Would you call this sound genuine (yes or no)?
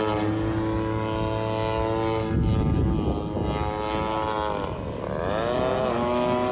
yes